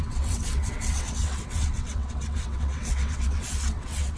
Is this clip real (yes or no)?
no